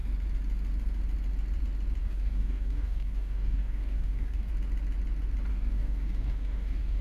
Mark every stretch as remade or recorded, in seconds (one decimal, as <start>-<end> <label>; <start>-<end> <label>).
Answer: 0.0-2.0 recorded; 2.0-4.5 remade; 4.5-5.5 recorded; 5.5-7.0 remade